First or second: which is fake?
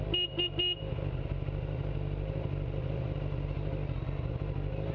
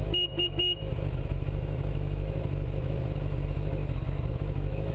second